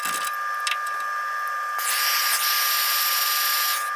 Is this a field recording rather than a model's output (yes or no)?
yes